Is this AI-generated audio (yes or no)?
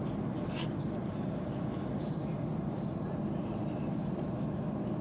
no